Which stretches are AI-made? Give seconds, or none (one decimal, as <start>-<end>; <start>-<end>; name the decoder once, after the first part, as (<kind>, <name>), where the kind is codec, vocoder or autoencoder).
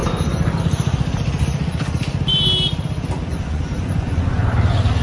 3.3-4.5 (vocoder, Vocos)